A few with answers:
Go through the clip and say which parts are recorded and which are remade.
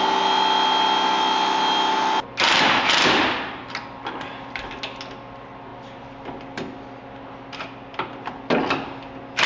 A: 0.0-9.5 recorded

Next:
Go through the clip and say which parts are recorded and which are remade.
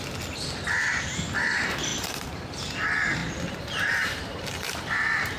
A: 0.0-1.9 recorded; 1.9-2.5 remade; 2.5-3.2 recorded; 3.2-5.4 remade